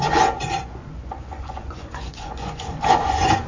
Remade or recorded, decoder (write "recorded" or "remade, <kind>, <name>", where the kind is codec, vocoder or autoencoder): remade, vocoder, Vocos